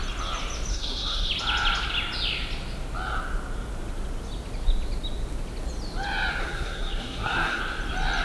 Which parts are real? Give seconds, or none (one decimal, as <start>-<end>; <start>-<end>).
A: 0.0-0.7; 1.3-6.4; 7.6-8.2